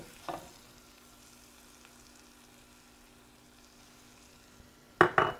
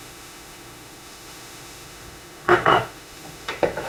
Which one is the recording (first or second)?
first